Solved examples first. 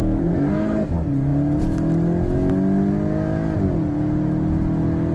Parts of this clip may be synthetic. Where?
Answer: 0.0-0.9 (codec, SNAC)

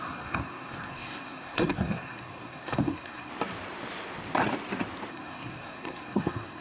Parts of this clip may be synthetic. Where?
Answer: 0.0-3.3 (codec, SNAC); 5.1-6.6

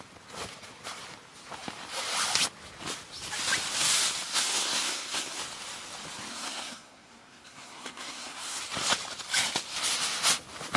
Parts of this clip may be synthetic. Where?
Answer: 4.3-5.4 (codec, SNAC); 6.3-8.6